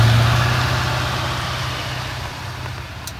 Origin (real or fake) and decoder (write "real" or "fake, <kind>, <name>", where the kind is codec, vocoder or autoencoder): real